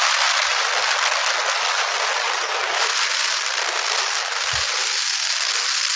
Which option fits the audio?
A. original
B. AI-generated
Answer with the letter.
A